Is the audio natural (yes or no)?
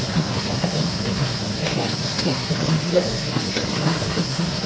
no